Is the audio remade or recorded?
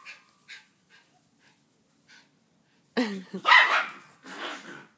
recorded